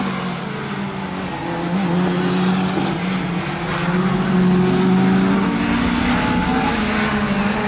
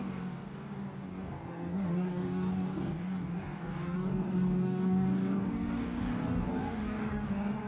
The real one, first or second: first